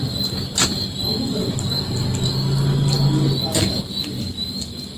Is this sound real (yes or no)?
yes